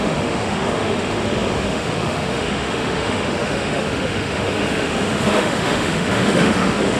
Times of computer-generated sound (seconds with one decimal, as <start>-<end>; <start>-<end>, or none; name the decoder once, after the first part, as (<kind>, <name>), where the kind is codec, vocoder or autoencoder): 0.0-7.0 (autoencoder, DAC-VAE)